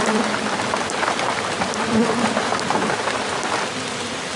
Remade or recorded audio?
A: recorded